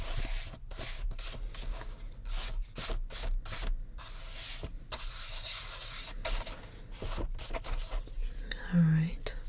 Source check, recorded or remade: recorded